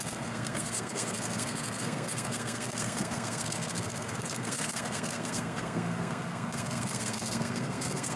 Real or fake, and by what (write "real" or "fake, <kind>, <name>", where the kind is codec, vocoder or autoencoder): fake, codec, SNAC